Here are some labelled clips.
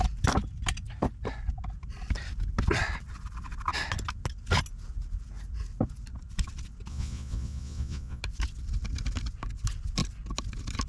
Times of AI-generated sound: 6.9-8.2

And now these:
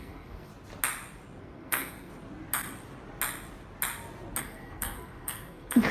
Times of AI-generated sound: 0.0-0.5; 1.4-2.1; 4.4-5.9

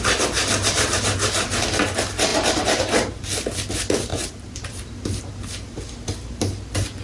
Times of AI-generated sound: 0.4-1.6; 2.3-3.2; 4.1-5.7

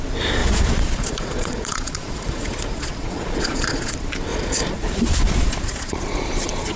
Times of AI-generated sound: 0.4-3.9; 4.3-6.8

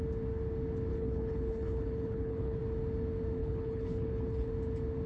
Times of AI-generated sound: 0.9-2.6; 3.4-4.5

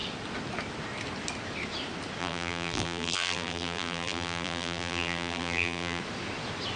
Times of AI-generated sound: 2.2-6.0